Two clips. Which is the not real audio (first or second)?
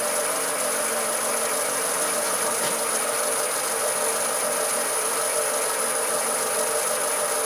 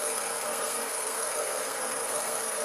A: second